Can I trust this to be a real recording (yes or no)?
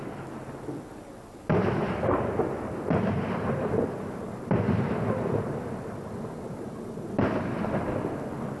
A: yes